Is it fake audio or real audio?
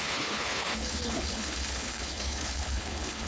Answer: fake